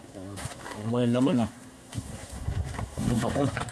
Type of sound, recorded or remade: remade